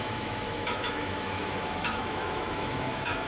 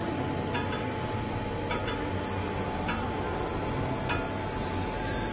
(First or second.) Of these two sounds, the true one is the second